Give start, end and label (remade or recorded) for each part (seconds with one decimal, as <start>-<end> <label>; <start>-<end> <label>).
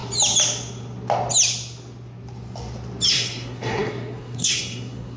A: 0.0-3.1 recorded; 3.1-5.2 remade